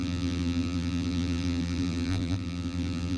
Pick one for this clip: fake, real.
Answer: fake